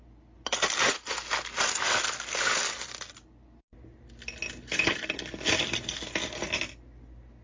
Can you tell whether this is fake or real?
real